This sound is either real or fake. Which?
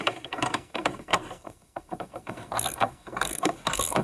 fake